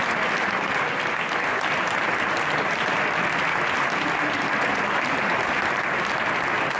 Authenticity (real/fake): real